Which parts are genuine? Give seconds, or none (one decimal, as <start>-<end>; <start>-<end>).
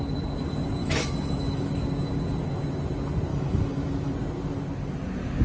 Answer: 0.0-0.8; 1.7-3.3; 4.1-5.4